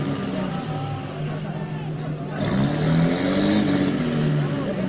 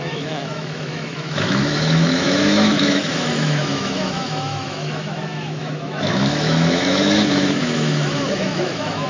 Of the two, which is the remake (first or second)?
second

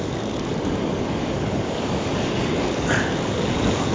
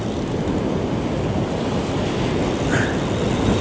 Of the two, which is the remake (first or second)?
first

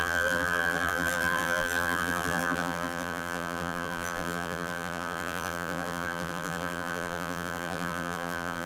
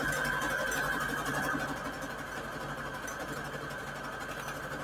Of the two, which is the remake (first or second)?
first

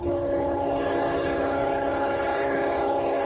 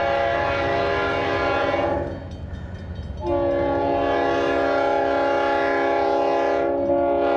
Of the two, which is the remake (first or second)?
first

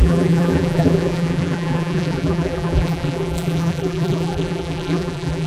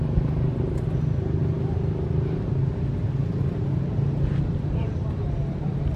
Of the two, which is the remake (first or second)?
first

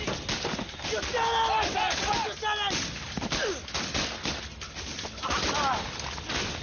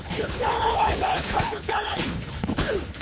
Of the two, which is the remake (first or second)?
second